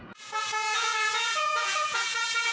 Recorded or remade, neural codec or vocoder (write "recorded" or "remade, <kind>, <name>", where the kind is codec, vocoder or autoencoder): remade, vocoder, Vocos